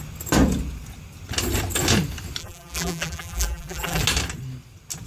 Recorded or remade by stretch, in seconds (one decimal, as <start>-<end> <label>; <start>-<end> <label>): 0.0-2.4 recorded; 2.4-4.0 remade; 4.0-5.1 recorded